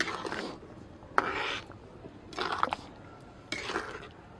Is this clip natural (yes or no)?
yes